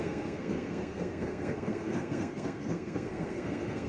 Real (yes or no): no